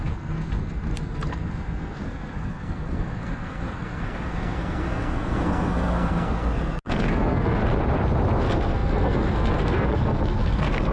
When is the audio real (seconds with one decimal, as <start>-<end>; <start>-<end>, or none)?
7.6-8.4